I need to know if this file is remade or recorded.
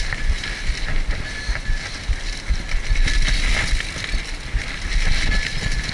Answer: recorded